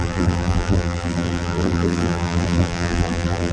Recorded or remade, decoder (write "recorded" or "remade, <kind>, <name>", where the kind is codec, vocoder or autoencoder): remade, vocoder, BigVGAN v2